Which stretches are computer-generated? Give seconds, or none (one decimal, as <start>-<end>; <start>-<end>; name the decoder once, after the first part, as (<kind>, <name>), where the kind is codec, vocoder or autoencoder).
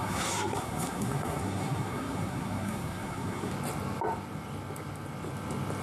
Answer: 0.0-3.5 (codec, SNAC)